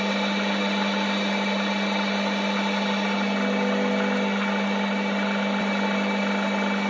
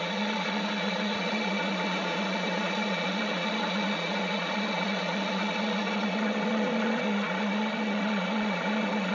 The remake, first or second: second